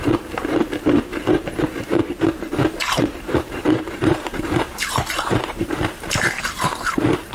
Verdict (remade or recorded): remade